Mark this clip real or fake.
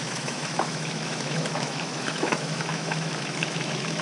fake